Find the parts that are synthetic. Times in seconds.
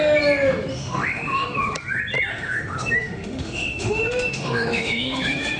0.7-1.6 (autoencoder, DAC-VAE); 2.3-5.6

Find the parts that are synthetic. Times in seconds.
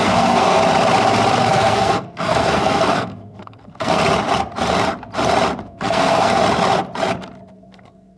0.0-0.6 (codec, SNAC); 1.4-4.0; 5.6-6.4; 7.5-8.2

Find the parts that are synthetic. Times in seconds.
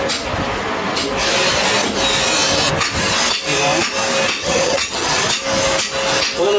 4.4-5.2 (vocoder, HiFi-GAN)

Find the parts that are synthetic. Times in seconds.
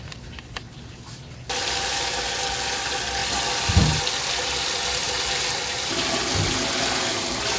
none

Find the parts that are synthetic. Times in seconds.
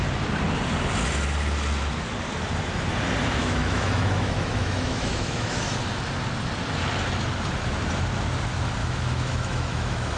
3.4-5.7 (autoencoder, DAC-VAE); 8.8-10.2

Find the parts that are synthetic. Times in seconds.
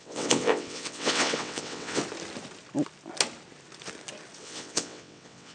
0.0-2.0 (vocoder, WaveNeXt); 4.4-5.5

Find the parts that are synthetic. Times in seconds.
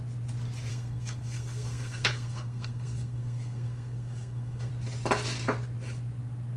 0.7-4.7 (codec, SNAC)